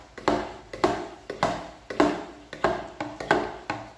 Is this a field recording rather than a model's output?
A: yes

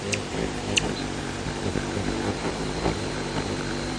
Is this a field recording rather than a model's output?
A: no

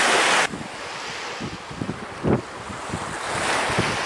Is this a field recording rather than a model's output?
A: yes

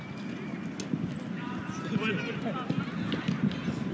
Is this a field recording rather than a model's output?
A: yes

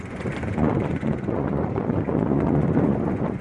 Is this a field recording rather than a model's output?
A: no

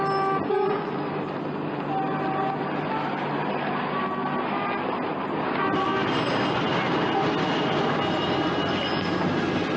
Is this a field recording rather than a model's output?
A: yes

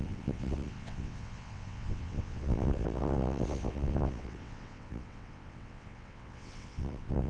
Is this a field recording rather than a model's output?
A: no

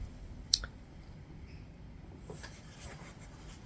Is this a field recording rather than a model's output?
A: no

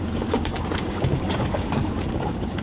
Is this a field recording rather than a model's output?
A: no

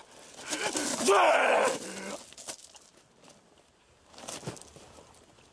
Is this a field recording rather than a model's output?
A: yes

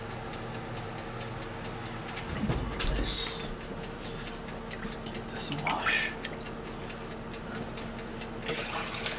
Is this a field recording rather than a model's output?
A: yes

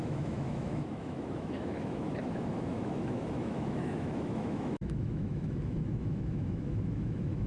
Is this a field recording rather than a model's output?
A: no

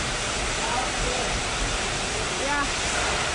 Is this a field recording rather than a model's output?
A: yes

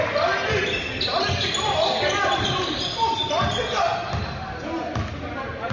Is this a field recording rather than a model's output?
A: yes